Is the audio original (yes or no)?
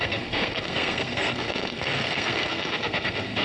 no